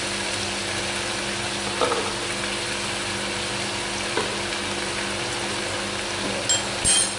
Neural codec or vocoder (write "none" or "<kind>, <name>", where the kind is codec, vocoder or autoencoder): none